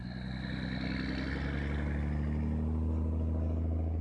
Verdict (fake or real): real